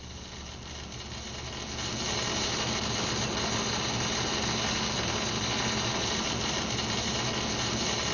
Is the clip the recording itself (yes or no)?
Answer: yes